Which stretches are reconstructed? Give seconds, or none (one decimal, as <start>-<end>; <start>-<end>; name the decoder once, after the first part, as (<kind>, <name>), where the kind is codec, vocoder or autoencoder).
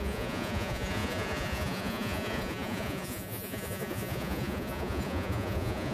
0.0-5.9 (vocoder, Vocos)